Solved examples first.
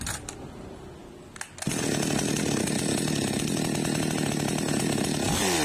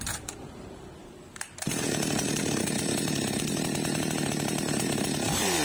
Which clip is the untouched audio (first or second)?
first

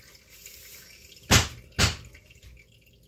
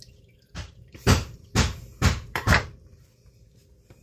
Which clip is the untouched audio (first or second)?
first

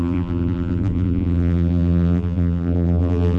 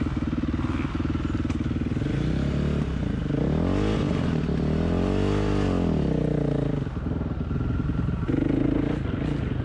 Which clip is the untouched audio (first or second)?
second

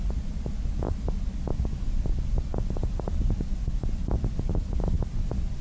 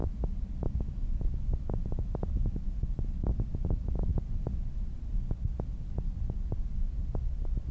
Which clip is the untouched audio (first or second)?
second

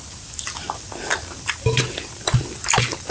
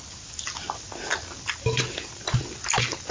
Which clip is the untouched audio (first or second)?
second